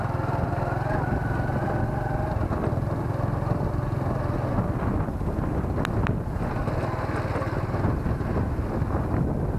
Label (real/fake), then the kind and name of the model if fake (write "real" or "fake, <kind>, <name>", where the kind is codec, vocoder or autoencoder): real